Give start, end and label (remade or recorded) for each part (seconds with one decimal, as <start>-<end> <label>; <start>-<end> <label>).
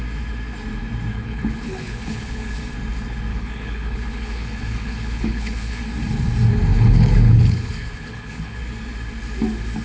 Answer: 0.0-1.1 recorded; 1.1-2.6 remade; 2.6-3.3 recorded; 3.3-5.8 remade; 5.8-6.7 recorded; 6.7-8.6 remade; 8.6-9.8 recorded